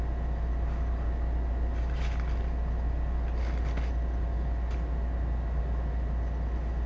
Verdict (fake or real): real